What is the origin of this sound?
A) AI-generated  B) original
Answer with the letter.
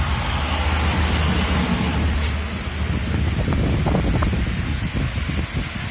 B